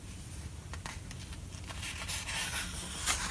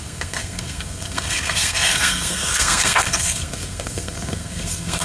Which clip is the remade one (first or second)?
second